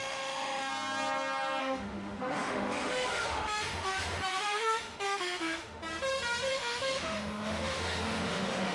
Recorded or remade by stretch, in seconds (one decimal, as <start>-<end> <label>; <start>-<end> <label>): 0.0-0.7 remade; 0.7-1.6 recorded; 1.6-5.8 remade; 5.8-6.5 recorded; 6.5-8.7 remade